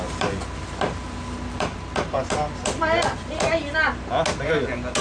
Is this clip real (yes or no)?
yes